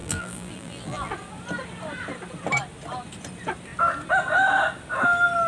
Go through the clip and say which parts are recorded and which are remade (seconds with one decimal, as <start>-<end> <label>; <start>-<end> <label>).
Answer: 0.0-1.1 remade; 1.1-5.5 recorded